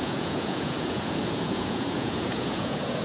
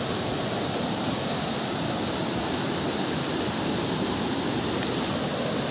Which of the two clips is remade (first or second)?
first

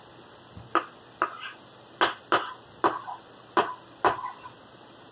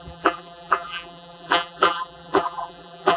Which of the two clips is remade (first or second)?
second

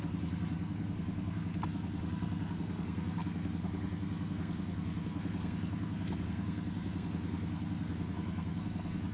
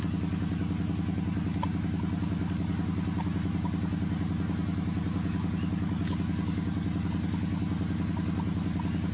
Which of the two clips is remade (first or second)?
first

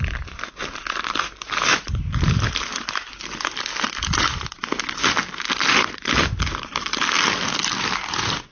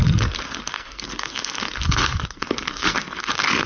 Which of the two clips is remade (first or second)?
second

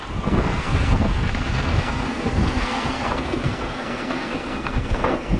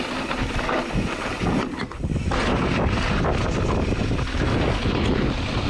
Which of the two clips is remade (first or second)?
first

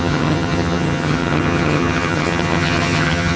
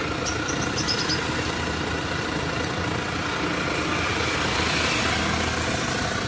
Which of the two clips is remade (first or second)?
first